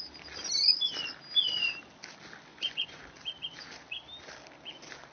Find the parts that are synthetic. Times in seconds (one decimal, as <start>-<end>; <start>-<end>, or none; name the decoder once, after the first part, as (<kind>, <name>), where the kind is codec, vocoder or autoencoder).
2.5-3.0 (vocoder, Vocos)